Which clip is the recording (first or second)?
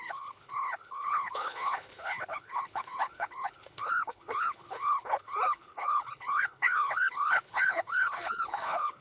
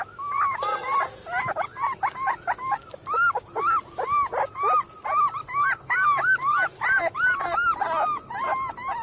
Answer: second